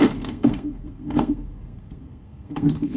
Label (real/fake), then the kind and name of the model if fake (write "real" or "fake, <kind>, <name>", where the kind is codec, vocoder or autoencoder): fake, codec, SNAC